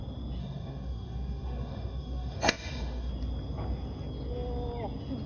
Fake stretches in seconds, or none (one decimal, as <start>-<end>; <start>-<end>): 0.4-3.1